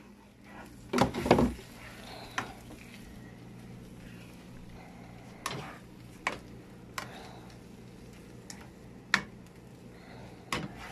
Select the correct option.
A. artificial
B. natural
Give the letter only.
B